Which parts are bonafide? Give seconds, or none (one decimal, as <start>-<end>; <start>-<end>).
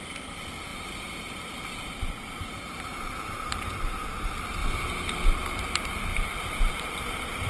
4.6-5.3